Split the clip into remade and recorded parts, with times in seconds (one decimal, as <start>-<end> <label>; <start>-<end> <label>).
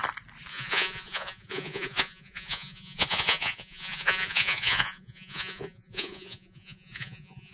0.0-0.5 recorded; 0.5-7.5 remade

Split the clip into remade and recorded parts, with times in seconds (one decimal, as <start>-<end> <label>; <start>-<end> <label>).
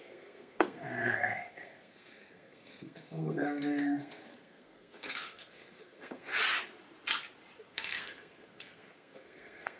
0.0-6.3 remade; 6.3-7.6 recorded; 7.6-9.8 remade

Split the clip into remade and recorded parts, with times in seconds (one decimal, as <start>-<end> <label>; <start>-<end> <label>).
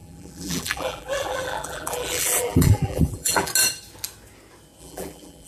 0.0-3.5 remade; 3.5-4.8 recorded; 4.8-5.5 remade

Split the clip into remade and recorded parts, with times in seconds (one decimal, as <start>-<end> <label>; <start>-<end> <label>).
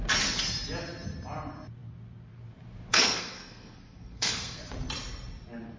0.0-2.9 recorded; 2.9-4.6 remade; 4.6-5.8 recorded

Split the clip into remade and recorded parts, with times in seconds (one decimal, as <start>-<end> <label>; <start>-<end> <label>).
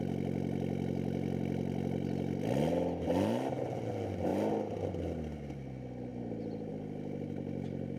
0.0-8.0 recorded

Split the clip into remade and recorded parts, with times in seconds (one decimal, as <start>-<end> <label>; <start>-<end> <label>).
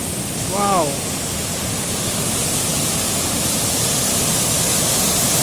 0.0-5.4 recorded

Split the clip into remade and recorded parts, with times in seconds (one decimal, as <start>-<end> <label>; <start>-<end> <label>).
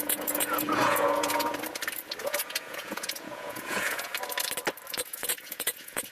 0.0-1.5 remade; 1.5-2.2 recorded; 2.2-4.1 remade; 4.1-4.9 recorded; 4.9-6.1 remade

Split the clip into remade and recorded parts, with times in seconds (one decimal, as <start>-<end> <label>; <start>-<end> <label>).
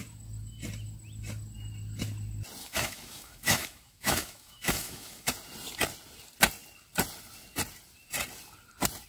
0.0-2.6 recorded; 2.6-5.3 remade; 5.3-9.1 recorded